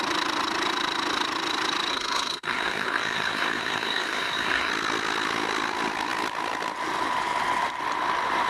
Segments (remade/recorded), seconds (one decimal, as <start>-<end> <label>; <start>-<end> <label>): 0.0-1.9 recorded; 1.9-4.7 remade; 4.7-8.5 recorded